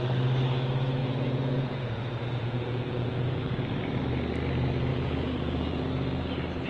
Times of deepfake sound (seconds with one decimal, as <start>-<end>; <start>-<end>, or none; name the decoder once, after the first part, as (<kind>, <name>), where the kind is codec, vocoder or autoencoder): 1.0-3.7 (vocoder, Vocos); 4.9-5.9

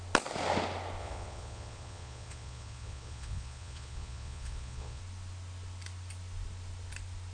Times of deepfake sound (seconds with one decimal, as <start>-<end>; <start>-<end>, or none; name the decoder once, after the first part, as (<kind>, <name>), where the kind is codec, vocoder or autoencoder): 1.0-5.0 (vocoder, Vocos)

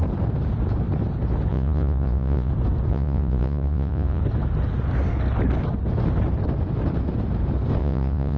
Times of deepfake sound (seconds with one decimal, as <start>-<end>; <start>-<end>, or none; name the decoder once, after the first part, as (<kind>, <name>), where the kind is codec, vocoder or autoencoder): 1.5-2.5 (vocoder, Vocos); 2.9-4.2; 7.8-8.4

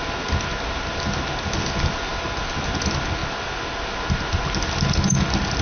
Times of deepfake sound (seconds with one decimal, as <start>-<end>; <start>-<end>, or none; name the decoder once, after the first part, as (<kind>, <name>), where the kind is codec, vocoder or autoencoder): none